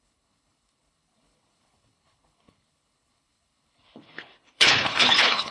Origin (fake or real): fake